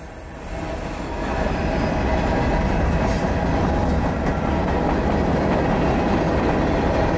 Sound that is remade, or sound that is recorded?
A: recorded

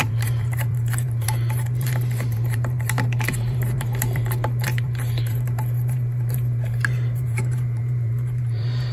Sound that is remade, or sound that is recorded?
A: remade